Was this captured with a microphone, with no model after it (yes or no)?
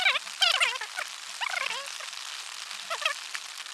yes